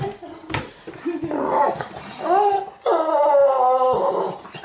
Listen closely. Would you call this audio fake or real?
real